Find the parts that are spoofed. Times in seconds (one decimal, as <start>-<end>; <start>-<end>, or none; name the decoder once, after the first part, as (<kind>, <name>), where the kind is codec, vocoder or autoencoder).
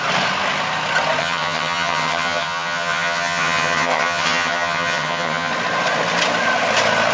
1.2-5.5 (vocoder, HiFi-GAN)